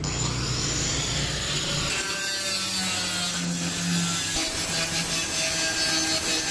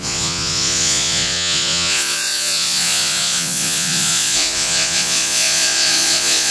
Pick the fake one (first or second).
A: second